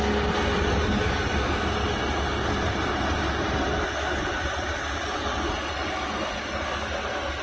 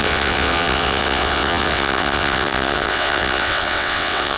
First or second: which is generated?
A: second